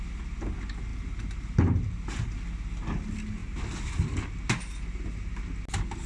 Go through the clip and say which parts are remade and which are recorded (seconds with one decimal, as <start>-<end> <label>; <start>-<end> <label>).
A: 0.0-6.1 recorded